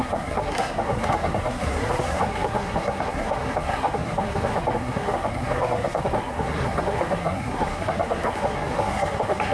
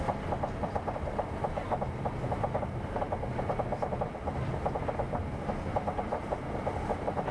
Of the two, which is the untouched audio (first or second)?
second